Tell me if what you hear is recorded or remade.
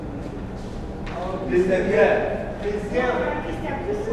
remade